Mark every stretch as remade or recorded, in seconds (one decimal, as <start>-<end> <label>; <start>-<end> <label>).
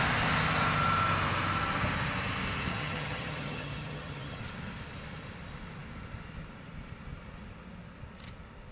0.0-2.7 recorded; 2.7-4.4 remade; 4.4-8.7 recorded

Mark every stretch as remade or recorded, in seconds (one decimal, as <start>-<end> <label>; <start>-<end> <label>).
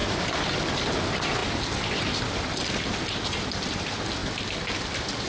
0.0-5.3 recorded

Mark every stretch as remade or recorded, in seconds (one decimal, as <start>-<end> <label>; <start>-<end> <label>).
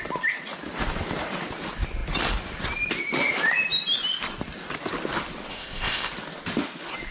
0.0-5.5 recorded; 5.5-6.1 remade; 6.1-7.1 recorded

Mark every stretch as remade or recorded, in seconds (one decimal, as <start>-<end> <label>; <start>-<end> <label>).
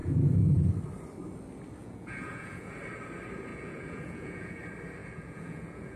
0.0-0.7 remade; 0.7-1.8 recorded; 1.8-2.8 remade; 2.8-3.5 recorded; 3.5-4.6 remade; 4.6-5.0 recorded; 5.0-6.0 remade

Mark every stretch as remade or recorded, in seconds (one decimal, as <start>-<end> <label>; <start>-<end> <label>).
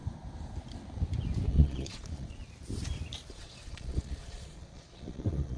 0.0-1.5 recorded; 1.5-2.4 remade; 2.4-3.3 recorded; 3.3-5.6 remade